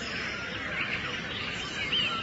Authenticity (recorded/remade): recorded